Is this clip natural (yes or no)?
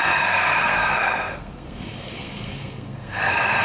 no